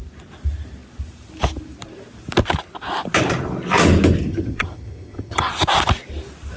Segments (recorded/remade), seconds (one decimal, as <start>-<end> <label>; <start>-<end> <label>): 0.0-4.2 recorded; 4.2-5.5 remade; 5.5-6.6 recorded